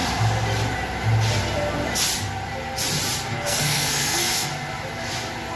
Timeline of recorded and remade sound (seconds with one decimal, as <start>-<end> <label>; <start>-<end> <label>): 0.0-3.3 recorded; 3.3-4.5 remade; 4.5-5.6 recorded

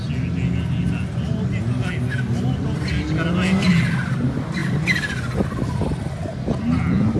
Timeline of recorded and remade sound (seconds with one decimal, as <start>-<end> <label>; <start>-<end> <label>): 0.0-7.2 recorded

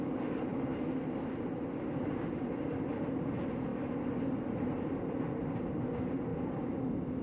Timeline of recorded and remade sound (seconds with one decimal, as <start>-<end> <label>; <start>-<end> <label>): 0.0-7.2 recorded

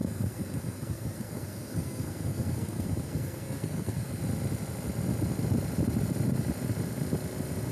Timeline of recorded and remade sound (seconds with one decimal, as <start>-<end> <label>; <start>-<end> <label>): 0.0-4.2 remade; 4.2-7.7 recorded

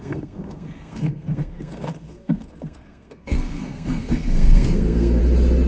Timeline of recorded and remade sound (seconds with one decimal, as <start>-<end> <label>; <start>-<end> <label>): 0.0-5.2 remade; 5.2-5.7 recorded

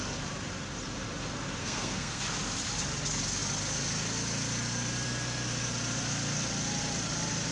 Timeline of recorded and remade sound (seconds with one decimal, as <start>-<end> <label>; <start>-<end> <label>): 0.0-1.6 recorded; 1.6-2.2 remade; 2.2-7.5 recorded

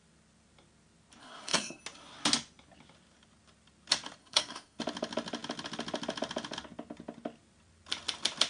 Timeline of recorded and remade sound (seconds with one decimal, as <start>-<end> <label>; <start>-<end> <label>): 0.0-1.2 recorded; 1.2-1.8 remade; 1.8-4.2 recorded; 4.2-4.8 remade; 4.8-8.5 recorded

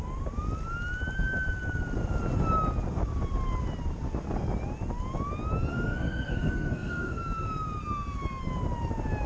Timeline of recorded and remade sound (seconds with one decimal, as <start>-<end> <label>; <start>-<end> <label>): 0.0-5.7 recorded; 5.7-7.2 remade; 7.2-9.3 recorded